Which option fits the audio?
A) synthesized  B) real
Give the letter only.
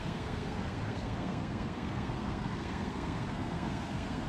A